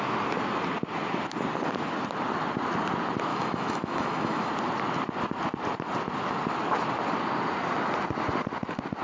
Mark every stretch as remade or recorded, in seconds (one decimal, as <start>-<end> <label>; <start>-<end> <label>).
0.0-3.3 recorded; 3.3-4.5 remade; 4.5-9.0 recorded